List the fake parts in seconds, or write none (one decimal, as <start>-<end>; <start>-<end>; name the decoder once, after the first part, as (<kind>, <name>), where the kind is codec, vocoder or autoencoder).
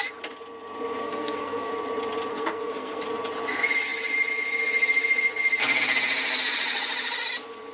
1.0-1.7 (codec, SNAC); 2.3-3.0